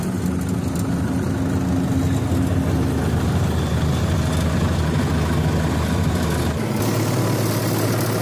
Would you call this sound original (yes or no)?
yes